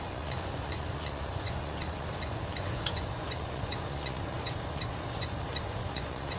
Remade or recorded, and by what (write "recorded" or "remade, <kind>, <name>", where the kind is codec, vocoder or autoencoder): remade, vocoder, Vocos